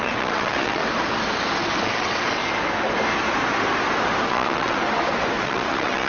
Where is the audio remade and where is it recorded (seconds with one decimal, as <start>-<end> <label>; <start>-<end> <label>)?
0.0-0.8 remade; 0.8-1.8 recorded; 1.8-2.4 remade; 2.4-4.3 recorded; 4.3-4.8 remade; 4.8-5.4 recorded; 5.4-6.1 remade